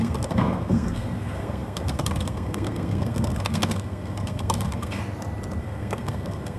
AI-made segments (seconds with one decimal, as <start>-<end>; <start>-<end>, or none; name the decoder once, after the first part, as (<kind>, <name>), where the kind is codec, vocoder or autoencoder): 0.0-5.0 (codec, SNAC); 5.6-6.6